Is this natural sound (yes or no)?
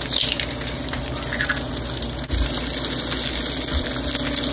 yes